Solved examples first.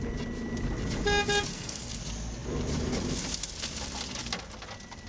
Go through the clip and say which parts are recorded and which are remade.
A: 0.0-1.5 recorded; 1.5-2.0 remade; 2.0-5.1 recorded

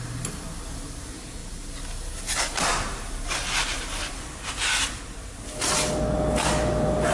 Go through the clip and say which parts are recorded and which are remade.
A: 0.0-7.1 recorded